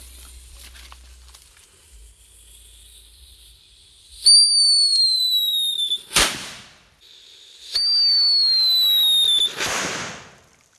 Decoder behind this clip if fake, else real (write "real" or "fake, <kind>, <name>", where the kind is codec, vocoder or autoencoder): real